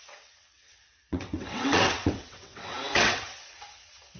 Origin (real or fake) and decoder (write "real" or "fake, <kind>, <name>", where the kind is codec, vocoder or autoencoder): fake, vocoder, WaveNeXt